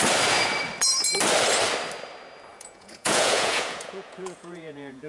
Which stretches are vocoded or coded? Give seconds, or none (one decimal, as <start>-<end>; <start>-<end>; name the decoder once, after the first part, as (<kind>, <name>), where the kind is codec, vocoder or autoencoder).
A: 2.5-5.1 (vocoder, Vocos)